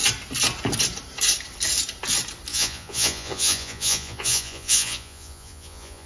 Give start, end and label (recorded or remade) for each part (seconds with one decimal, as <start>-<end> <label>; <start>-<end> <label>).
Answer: 0.0-2.5 recorded; 2.5-6.1 remade